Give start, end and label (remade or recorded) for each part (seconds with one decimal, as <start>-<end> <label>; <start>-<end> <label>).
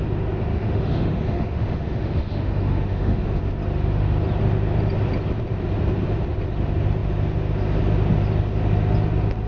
0.0-0.5 recorded; 0.5-3.4 remade; 3.4-9.5 recorded